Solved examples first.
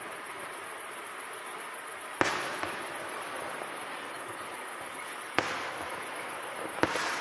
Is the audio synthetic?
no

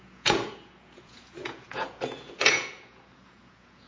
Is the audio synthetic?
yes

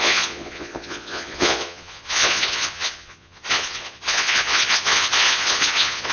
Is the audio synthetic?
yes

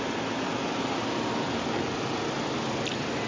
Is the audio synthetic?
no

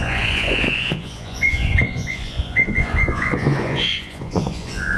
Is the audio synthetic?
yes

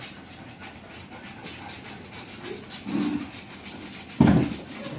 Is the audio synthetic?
no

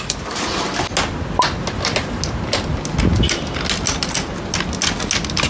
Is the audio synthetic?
no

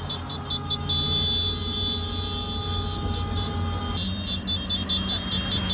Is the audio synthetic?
no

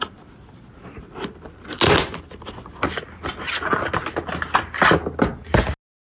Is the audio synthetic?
no